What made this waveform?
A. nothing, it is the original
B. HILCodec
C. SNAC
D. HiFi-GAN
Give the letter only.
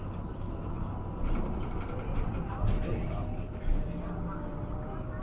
A